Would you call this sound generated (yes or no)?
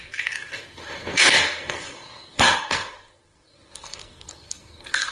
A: yes